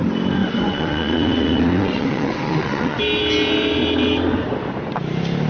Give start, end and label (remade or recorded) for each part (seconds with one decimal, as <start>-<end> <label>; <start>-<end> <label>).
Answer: 0.0-0.4 recorded; 0.4-3.0 remade; 3.0-5.5 recorded